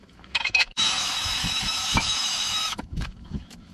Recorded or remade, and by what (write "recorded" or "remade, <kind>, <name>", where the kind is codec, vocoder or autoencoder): remade, autoencoder, DAC-VAE